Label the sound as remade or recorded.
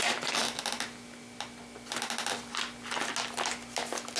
recorded